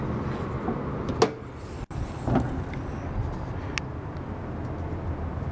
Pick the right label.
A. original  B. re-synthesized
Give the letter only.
A